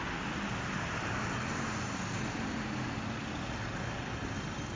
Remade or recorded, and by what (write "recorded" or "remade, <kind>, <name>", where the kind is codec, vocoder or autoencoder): recorded